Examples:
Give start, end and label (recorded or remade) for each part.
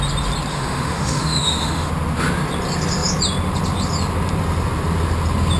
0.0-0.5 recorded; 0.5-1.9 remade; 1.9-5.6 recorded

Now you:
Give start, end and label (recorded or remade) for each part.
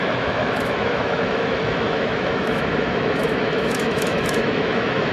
0.0-5.1 remade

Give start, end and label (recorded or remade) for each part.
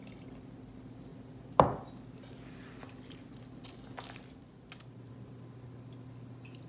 0.0-6.7 recorded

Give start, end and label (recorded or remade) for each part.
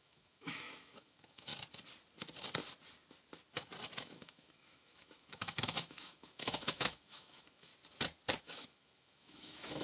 0.0-1.5 remade; 1.5-4.0 recorded; 4.0-7.7 remade; 7.7-8.4 recorded; 8.4-9.8 remade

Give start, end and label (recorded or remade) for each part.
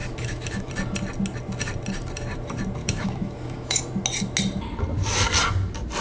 0.0-0.7 remade; 0.7-2.8 recorded; 2.8-3.8 remade; 3.8-6.0 recorded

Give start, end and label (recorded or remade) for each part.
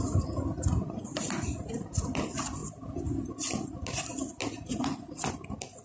0.0-5.8 recorded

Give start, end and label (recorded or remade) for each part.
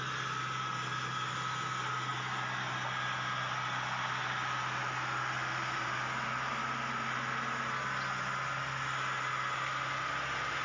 0.0-10.6 recorded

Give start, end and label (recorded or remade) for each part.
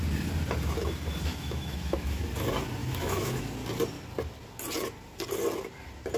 0.0-1.3 recorded; 1.3-2.3 remade; 2.3-2.8 recorded; 2.8-3.5 remade; 3.5-6.2 recorded